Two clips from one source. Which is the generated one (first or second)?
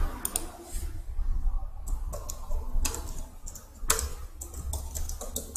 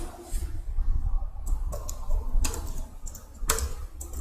second